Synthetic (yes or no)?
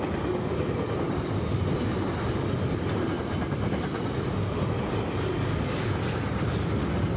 no